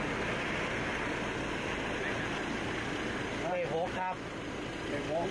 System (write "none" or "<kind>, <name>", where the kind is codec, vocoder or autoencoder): none